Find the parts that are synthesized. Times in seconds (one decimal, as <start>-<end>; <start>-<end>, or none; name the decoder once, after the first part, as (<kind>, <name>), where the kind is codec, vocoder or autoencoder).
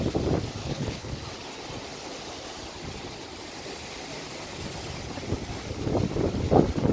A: 0.6-1.2 (codec, HILCodec)